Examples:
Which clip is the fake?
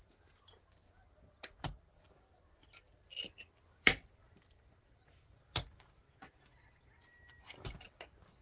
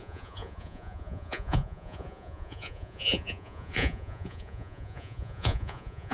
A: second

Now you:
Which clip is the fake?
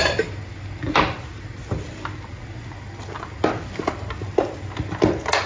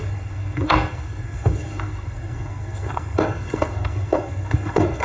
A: second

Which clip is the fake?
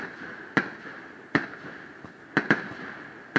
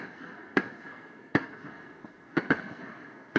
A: second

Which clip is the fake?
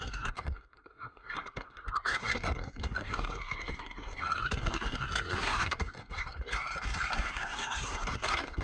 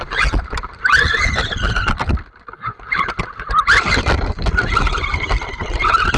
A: first